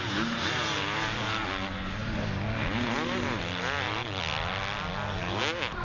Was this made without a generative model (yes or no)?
yes